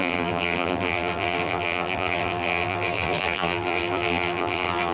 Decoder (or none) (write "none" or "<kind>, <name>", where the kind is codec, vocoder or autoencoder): vocoder, BigVGAN v2